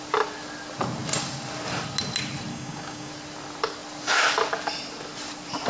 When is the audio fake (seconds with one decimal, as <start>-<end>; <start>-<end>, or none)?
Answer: 2.5-3.1

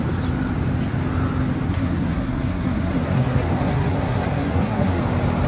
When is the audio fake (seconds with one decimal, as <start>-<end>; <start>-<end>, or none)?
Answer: 1.7-5.0

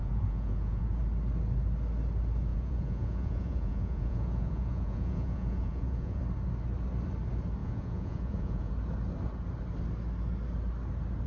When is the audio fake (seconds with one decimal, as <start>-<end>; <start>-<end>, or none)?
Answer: 0.0-1.0; 2.5-6.2; 7.6-8.7

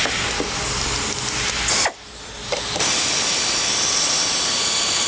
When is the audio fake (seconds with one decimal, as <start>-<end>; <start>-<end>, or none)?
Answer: none

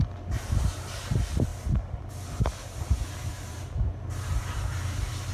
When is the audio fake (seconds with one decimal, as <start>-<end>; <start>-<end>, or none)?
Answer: 3.2-5.3

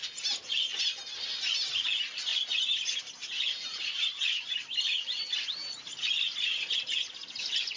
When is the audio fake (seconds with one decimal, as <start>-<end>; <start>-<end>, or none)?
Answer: 0.7-1.7; 2.3-3.0; 3.7-5.1

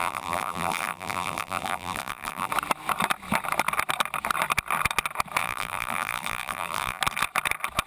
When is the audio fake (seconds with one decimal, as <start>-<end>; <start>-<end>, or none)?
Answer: 0.0-2.5; 5.4-7.0